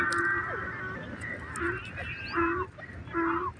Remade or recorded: recorded